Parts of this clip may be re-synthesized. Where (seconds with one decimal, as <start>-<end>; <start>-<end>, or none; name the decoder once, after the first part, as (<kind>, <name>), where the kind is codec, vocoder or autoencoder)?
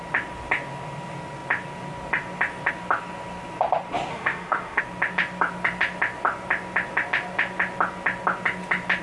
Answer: 4.1-4.8 (autoencoder, DAC-VAE)